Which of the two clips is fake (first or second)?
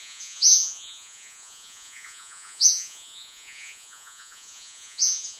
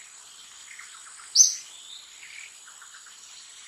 first